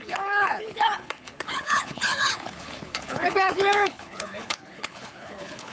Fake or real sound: fake